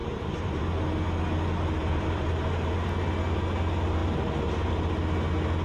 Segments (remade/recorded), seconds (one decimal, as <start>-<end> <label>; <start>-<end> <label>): 0.0-0.6 remade; 0.6-1.8 recorded; 1.8-2.7 remade; 2.7-5.6 recorded